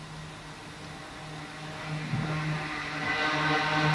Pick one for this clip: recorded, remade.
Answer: recorded